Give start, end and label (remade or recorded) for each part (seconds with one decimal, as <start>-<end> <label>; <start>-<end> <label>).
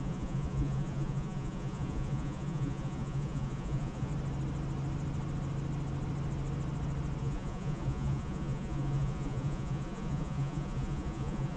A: 0.0-4.1 remade; 4.1-7.2 recorded; 7.2-11.6 remade